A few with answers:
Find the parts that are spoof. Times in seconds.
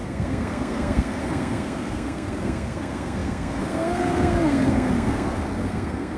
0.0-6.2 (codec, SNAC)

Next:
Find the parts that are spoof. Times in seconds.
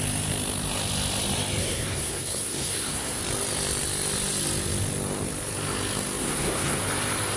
1.6-3.2 (codec, SNAC); 6.2-6.8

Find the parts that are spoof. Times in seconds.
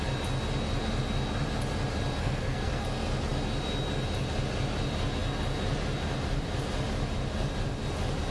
2.2-2.8 (codec, SNAC)